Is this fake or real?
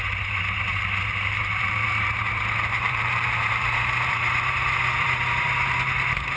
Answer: fake